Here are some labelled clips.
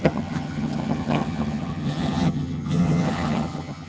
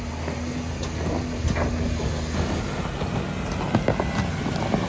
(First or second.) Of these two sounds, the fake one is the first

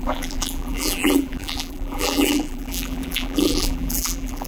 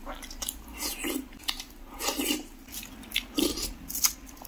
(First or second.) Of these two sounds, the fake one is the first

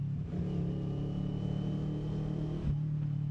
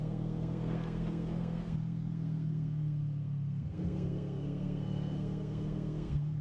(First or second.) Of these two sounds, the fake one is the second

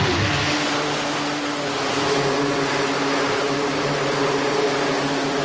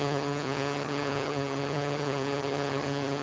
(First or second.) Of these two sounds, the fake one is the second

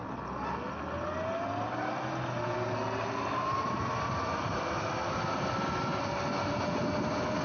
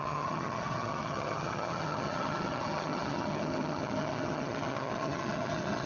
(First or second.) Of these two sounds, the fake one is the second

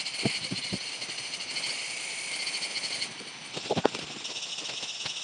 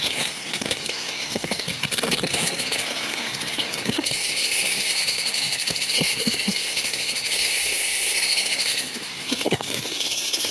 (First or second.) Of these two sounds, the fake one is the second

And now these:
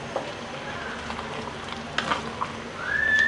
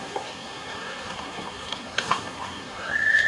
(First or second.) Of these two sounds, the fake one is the second